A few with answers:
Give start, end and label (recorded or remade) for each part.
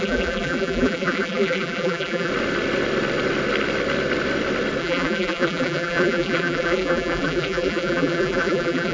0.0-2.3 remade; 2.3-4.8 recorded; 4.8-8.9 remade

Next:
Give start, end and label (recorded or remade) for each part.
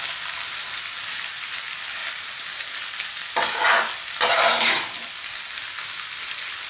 0.0-6.7 recorded